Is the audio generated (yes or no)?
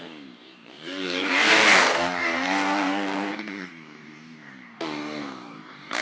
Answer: yes